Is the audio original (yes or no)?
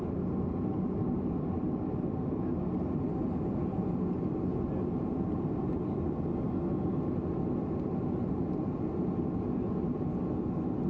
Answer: yes